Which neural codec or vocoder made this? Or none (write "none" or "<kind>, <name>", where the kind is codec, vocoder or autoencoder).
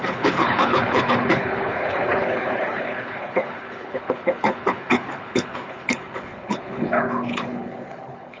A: codec, HILCodec